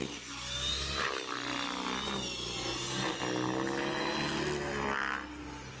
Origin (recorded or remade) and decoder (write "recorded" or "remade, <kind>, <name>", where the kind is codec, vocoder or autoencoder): recorded